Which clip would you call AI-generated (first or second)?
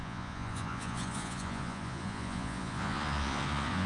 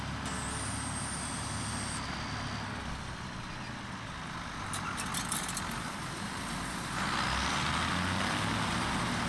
first